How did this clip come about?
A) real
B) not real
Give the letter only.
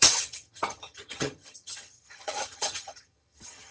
B